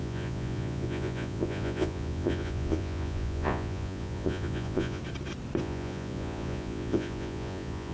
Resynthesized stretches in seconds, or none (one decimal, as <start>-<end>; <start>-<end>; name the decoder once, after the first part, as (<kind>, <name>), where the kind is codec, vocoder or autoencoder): 0.0-5.0 (vocoder, Vocos); 5.6-7.9